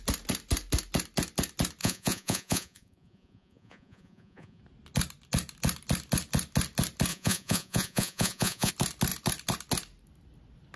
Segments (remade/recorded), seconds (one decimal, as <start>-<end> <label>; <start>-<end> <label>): 0.0-1.8 recorded; 1.8-4.6 remade; 4.6-7.1 recorded; 7.1-8.7 remade; 8.7-10.8 recorded